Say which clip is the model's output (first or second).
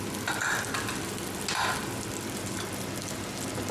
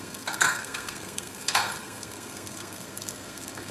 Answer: second